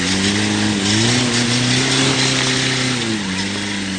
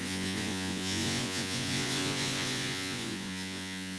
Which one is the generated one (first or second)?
second